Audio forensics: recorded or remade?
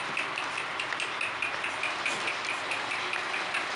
recorded